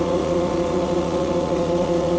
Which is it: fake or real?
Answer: fake